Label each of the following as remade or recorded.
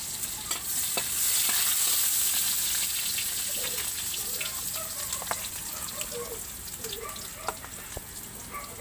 recorded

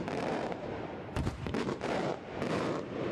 remade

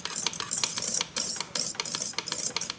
recorded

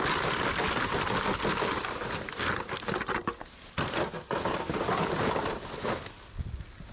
recorded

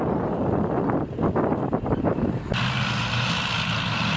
recorded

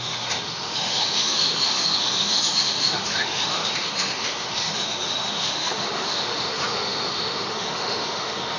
remade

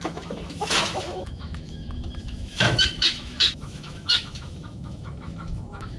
remade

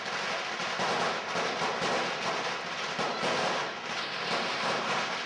recorded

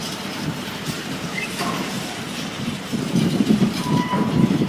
remade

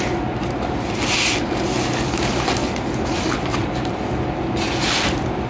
recorded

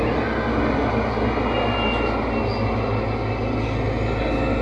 recorded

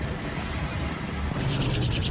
remade